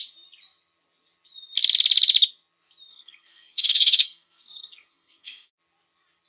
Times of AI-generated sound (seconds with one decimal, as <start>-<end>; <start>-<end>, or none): 2.9-5.5